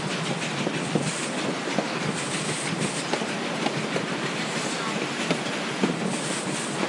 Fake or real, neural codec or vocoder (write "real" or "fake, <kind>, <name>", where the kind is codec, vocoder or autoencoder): real